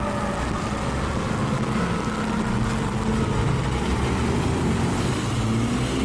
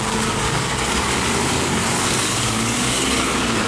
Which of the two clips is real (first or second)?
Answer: first